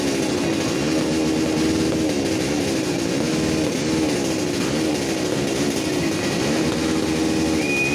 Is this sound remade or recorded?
recorded